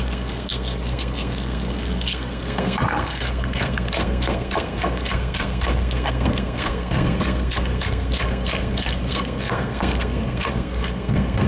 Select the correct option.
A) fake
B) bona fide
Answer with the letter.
A